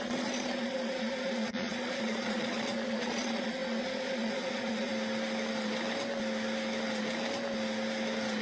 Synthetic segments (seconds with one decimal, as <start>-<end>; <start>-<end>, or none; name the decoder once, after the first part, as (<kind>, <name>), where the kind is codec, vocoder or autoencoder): 0.0-4.9 (vocoder, Vocos)